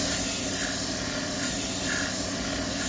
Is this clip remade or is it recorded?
recorded